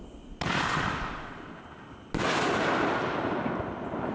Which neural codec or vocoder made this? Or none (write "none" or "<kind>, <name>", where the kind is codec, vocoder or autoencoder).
none